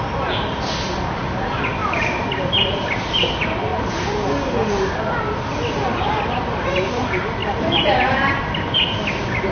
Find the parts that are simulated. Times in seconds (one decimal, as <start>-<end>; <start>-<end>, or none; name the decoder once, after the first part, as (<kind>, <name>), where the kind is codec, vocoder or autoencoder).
1.8-3.0 (vocoder, BigVGAN v2)